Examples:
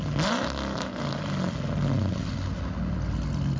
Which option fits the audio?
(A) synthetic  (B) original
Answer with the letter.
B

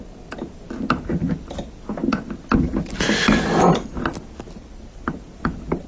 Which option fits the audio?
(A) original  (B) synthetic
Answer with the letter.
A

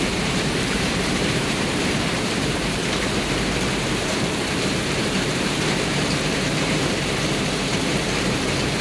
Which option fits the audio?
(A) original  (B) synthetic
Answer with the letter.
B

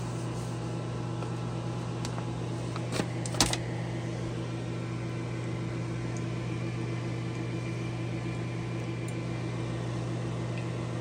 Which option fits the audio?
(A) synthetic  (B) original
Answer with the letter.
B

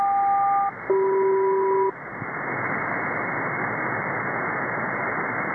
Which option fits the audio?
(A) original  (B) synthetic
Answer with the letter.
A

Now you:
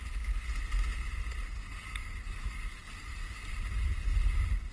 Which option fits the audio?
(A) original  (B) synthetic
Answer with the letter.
A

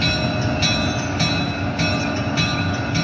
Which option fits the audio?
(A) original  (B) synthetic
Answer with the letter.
A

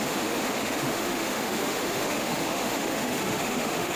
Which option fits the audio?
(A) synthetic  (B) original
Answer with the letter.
A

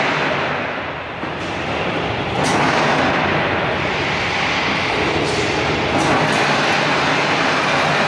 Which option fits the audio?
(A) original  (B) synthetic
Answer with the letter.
A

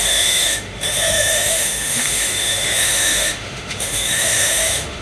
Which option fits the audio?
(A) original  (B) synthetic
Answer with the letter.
B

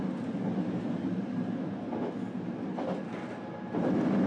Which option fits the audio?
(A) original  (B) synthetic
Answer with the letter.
A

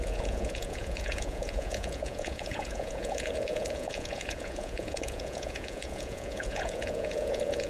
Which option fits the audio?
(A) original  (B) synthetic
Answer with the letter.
B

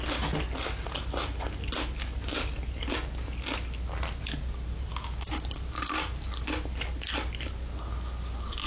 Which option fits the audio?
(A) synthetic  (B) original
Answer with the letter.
B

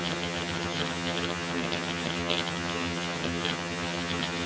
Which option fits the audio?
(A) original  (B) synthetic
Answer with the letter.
B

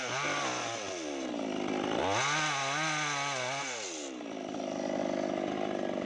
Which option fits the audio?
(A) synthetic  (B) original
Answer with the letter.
B